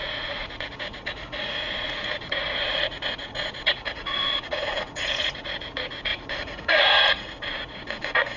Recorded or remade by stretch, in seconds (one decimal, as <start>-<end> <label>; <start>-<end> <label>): 0.0-8.4 remade